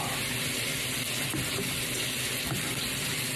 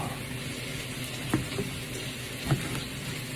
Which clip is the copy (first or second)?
first